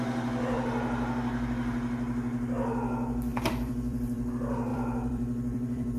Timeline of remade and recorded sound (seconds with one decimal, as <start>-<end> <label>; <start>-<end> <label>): 0.0-3.3 recorded; 3.3-4.3 remade; 4.3-4.7 recorded; 4.7-6.0 remade